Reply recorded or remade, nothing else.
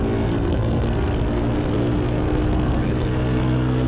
remade